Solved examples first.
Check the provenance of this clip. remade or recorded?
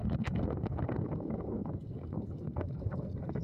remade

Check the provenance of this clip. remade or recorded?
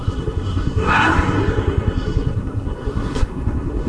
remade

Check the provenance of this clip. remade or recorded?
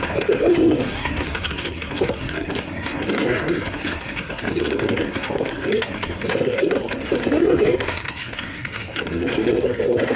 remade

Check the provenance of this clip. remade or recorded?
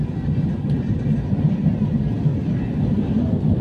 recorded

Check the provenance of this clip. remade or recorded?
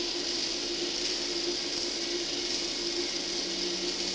recorded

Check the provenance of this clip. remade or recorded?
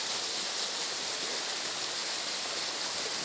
recorded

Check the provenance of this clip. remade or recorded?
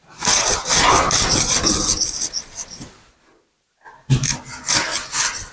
recorded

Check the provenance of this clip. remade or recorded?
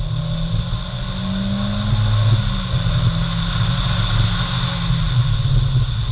recorded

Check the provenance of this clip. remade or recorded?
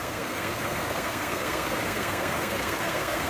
remade